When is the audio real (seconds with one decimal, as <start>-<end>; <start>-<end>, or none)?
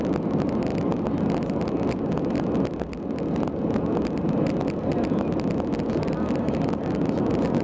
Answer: 0.0-7.6